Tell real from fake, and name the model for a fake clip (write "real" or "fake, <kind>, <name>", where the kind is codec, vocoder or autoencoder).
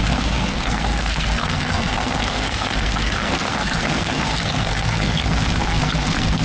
fake, codec, SNAC